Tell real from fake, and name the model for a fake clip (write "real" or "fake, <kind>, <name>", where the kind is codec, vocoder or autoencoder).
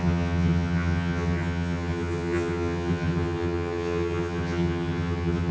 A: fake, vocoder, HiFi-GAN